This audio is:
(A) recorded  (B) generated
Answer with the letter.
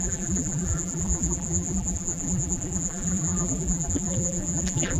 B